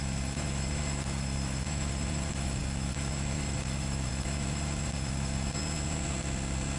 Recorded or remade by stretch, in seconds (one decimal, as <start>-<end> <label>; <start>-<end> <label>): 0.0-5.6 remade; 5.6-6.8 recorded